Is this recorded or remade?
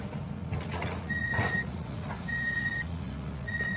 remade